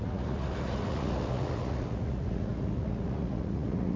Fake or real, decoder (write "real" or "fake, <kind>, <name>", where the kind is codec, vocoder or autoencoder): fake, vocoder, Vocos